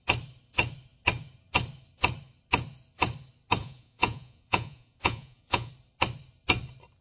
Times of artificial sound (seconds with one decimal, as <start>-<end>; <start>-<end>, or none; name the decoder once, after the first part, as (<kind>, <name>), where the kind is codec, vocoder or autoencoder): 3.6-5.7 (vocoder, Vocos)